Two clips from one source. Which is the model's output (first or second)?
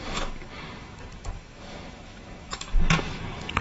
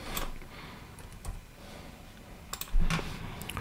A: first